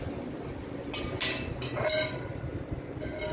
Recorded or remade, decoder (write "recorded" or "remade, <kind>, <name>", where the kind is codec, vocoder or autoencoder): recorded